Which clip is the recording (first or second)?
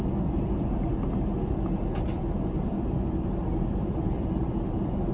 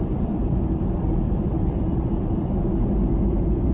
first